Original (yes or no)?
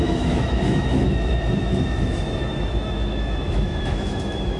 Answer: no